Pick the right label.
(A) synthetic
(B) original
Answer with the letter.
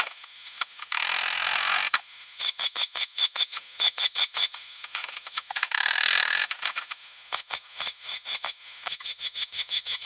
A